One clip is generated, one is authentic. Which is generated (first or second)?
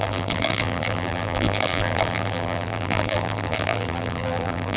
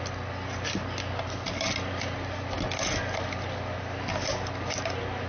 first